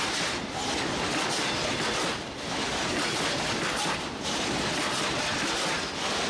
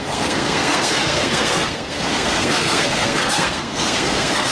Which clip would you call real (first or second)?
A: first